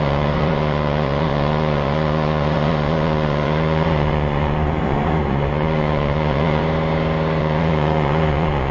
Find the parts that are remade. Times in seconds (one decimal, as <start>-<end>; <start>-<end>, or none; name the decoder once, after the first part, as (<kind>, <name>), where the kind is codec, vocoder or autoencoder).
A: 0.0-6.6 (vocoder, Vocos); 7.4-8.7